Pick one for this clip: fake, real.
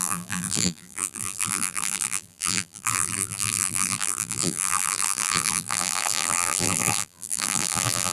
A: fake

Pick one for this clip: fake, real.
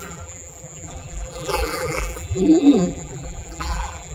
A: fake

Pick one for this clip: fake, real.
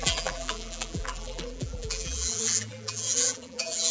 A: fake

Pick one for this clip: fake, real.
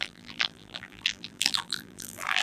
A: fake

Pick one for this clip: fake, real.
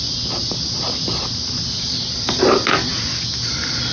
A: real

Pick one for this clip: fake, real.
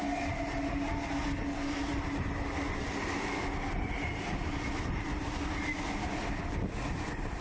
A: real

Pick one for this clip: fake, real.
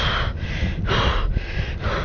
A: real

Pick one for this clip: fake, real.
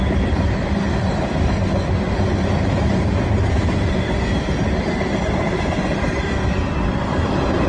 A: real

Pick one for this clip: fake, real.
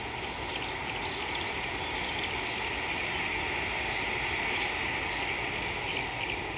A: real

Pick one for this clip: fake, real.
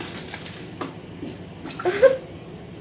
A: real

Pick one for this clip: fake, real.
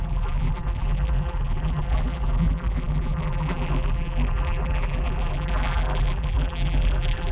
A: fake